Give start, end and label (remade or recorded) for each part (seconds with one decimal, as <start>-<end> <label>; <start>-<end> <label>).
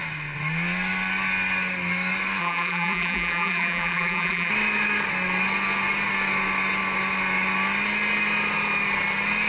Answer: 0.0-2.4 recorded; 2.4-4.5 remade; 4.5-9.5 recorded